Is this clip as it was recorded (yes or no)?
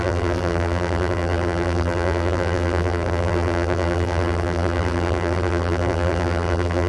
no